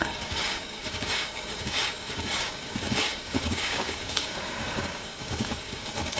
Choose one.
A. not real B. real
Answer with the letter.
A